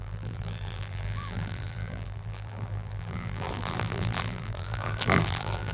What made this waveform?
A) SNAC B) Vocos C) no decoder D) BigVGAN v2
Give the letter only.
D